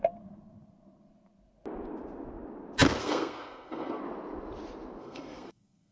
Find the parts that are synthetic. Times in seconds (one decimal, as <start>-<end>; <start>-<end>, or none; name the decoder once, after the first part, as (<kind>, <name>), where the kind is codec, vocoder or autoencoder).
3.0-4.0 (codec, SNAC); 5.0-5.9